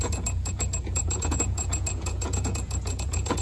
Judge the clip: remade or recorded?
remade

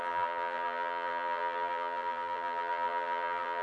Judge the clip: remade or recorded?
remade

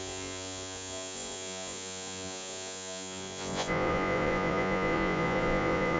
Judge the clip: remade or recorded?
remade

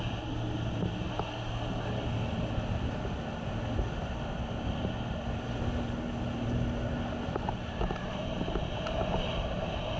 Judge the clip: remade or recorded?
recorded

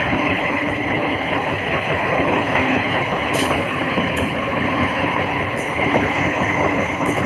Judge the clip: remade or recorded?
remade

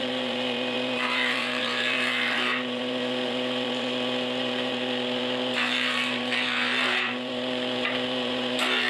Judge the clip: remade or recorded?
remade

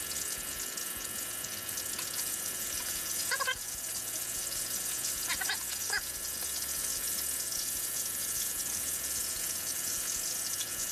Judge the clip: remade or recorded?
remade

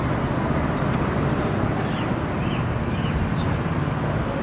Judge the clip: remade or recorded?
recorded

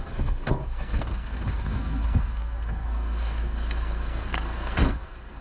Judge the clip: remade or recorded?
remade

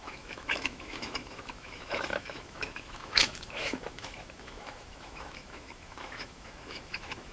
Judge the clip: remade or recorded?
remade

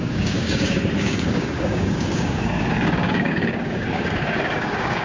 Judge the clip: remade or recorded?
remade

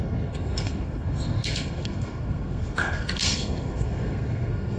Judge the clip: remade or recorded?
remade